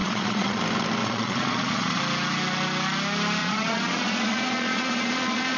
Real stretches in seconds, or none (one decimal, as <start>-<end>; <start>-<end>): 0.6-1.0; 2.0-3.4

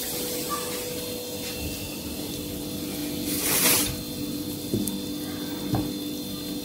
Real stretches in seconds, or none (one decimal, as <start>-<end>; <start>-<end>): 0.0-6.6

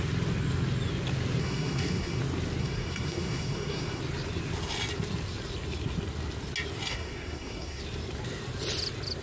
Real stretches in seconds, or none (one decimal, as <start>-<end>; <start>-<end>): 0.0-1.4; 2.2-2.6; 4.0-6.9; 7.8-9.2

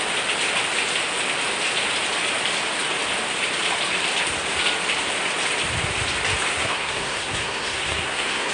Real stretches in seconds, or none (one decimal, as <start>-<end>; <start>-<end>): 0.0-6.5

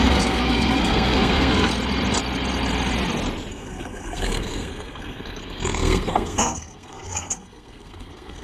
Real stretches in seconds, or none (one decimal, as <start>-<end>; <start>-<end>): 1.7-3.5

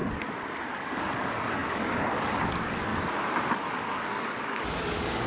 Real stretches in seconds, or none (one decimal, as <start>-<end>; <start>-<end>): 0.0-0.7; 2.9-3.5

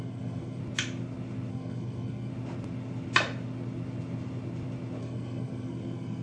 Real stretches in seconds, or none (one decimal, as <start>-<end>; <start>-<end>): 0.6-1.5; 2.3-5.0